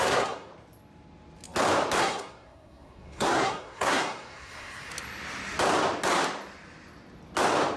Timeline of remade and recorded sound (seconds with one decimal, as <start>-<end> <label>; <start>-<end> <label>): 0.0-0.5 remade; 0.5-2.0 recorded; 2.0-4.9 remade; 4.9-7.8 recorded